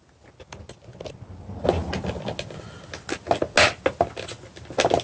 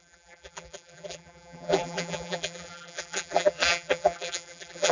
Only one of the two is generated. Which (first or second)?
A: second